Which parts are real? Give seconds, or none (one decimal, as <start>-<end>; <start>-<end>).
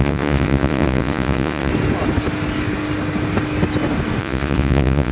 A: 1.7-4.2